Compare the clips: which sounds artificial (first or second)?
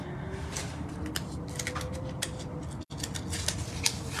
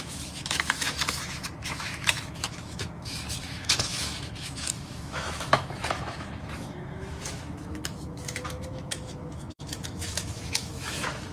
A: second